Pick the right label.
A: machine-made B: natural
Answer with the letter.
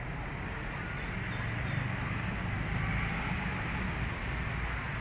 B